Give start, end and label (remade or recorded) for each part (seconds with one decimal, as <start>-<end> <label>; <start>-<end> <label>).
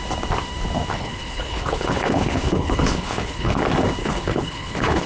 0.0-0.9 recorded; 0.9-3.6 remade; 3.6-4.0 recorded; 4.0-5.1 remade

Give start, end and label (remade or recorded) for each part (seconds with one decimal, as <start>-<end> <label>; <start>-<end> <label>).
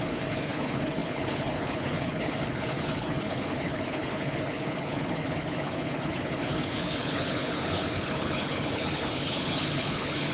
0.0-10.3 remade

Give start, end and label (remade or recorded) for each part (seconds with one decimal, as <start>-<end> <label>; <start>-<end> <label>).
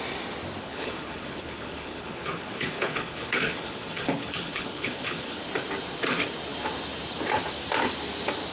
0.0-0.6 recorded; 0.6-5.4 remade; 5.4-8.5 recorded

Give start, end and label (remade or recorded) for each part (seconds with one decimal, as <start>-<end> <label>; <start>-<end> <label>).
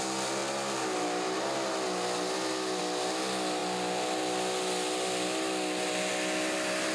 0.0-6.9 recorded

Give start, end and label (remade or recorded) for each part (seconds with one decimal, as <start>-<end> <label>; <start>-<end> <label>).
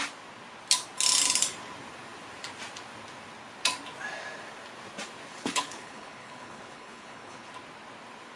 0.0-5.3 recorded; 5.3-7.5 remade; 7.5-8.4 recorded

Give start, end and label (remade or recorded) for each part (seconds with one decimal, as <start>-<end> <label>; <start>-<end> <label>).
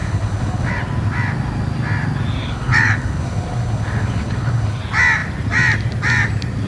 0.0-0.7 remade; 0.7-2.4 recorded; 2.4-4.8 remade; 4.8-6.7 recorded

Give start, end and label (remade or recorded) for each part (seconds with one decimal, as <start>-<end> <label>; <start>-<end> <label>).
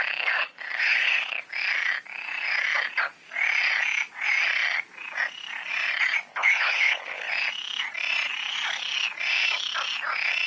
0.0-0.4 recorded; 0.4-1.4 remade; 1.4-6.3 recorded; 6.3-7.3 remade; 7.3-10.5 recorded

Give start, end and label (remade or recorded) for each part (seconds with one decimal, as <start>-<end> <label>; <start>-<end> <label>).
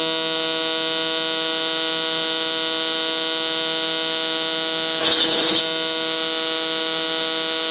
0.0-5.0 recorded; 5.0-5.6 remade; 5.6-7.7 recorded